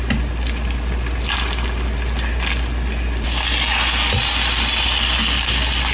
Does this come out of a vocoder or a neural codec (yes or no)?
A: no